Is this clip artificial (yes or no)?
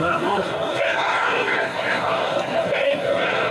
yes